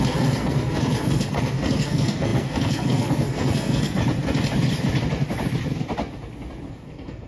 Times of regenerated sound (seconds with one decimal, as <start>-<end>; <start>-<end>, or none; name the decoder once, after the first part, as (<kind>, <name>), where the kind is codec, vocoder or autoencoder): 0.0-4.0 (codec, SNAC); 6.7-7.3